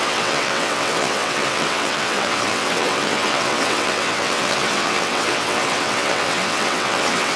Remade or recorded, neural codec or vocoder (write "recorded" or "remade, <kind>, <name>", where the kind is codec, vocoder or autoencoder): remade, vocoder, WaveNeXt